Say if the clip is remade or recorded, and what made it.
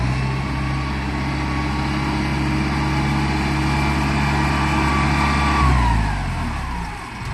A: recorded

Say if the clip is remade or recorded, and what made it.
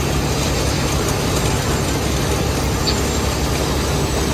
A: recorded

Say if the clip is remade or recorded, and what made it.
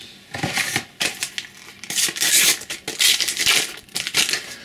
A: recorded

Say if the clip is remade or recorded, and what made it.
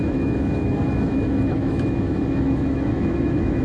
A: remade, autoencoder, DAC-VAE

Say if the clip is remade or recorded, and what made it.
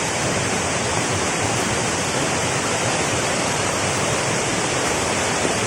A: remade, vocoder, BigVGAN v2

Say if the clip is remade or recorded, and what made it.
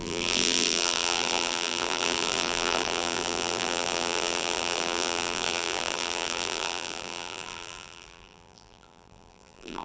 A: remade, vocoder, BigVGAN v2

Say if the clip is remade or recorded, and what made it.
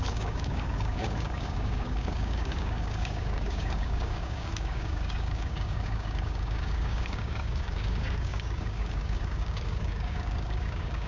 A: remade, codec, DAC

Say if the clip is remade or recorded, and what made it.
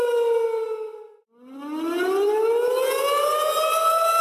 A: recorded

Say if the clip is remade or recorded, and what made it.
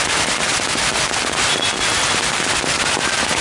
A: recorded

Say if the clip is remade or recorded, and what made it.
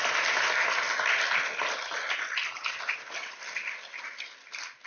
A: recorded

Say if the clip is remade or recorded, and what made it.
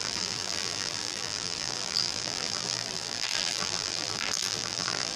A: remade, vocoder, BigVGAN v2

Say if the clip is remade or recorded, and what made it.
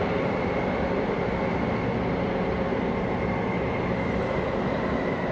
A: recorded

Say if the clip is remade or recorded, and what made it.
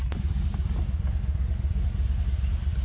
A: recorded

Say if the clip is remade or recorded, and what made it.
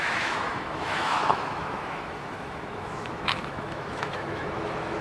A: remade, autoencoder, DAC-VAE